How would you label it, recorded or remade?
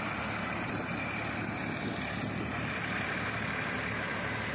recorded